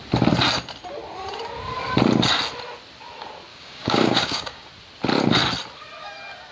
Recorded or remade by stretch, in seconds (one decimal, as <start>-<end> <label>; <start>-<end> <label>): 0.0-3.5 recorded; 3.5-4.7 remade; 4.7-6.5 recorded